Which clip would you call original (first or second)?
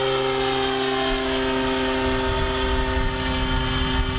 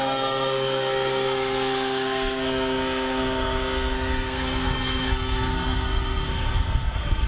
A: first